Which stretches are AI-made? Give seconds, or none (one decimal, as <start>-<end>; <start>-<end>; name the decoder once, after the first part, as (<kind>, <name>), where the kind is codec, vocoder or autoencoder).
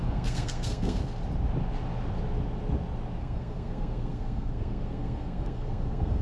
0.0-1.0 (codec, SNAC); 3.2-6.2